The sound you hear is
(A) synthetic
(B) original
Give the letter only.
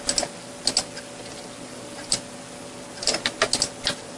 B